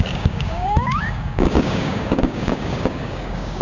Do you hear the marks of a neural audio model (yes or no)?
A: yes